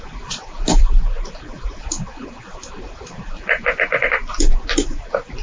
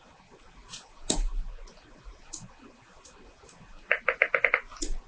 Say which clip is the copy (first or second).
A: first